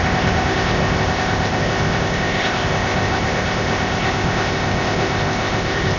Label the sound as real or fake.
fake